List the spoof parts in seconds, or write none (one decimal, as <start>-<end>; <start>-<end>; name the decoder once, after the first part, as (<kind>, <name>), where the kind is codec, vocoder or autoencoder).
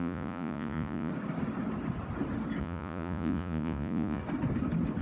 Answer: 0.0-1.1 (vocoder, Vocos); 2.6-4.2